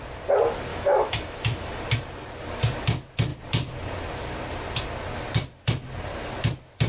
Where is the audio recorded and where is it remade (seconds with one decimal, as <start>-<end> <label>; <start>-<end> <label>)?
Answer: 0.0-0.7 recorded; 0.7-1.8 remade; 1.8-6.9 recorded